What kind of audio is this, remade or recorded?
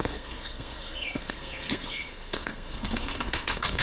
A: remade